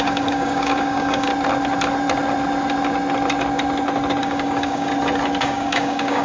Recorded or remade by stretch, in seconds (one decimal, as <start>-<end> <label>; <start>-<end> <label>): 0.0-1.3 remade; 1.3-4.2 recorded; 4.2-4.9 remade; 4.9-5.4 recorded; 5.4-6.2 remade